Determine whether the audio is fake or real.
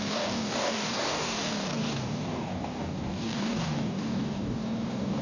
fake